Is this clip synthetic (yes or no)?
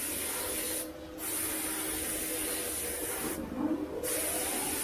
no